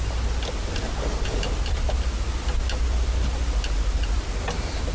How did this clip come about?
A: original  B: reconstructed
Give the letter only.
A